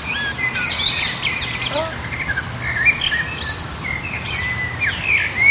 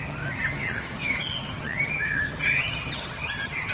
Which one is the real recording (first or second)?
first